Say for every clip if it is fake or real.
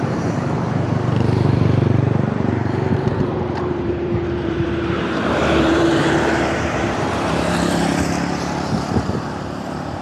fake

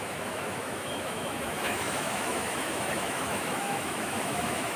fake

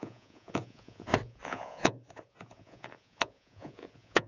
fake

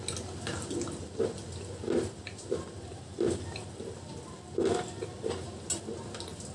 real